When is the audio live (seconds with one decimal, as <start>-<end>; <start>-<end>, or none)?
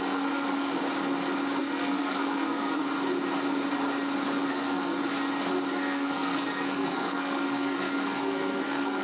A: 0.8-1.6; 2.8-4.5; 5.0-5.7